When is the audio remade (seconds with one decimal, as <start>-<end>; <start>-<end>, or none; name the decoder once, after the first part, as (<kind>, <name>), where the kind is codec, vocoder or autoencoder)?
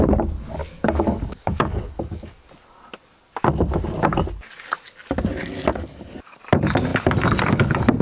0.6-2.3 (codec, DAC); 5.7-6.4